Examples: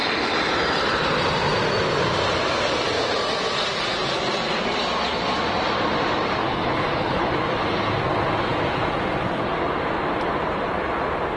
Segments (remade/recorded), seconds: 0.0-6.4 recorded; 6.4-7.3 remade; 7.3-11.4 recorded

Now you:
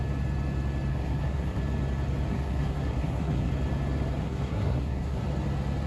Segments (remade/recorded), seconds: 0.0-0.9 recorded; 0.9-1.6 remade; 1.6-2.3 recorded; 2.3-3.5 remade; 3.5-4.2 recorded; 4.2-5.2 remade; 5.2-5.9 recorded

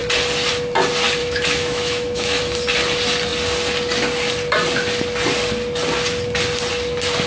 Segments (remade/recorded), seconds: 0.0-1.2 recorded; 1.2-2.4 remade; 2.4-7.3 recorded

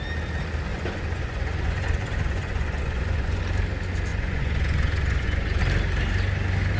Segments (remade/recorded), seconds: 0.0-0.7 recorded; 0.7-3.4 remade; 3.4-4.1 recorded; 4.1-5.6 remade; 5.6-6.8 recorded